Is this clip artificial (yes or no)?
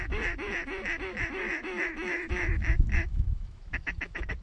yes